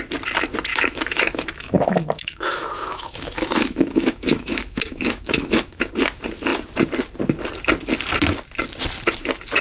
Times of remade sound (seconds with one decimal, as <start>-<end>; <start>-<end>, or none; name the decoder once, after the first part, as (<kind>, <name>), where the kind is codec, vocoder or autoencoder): 0.7-5.9 (autoencoder, DAC-VAE)